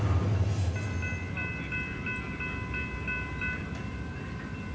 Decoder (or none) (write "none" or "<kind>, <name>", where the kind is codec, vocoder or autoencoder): none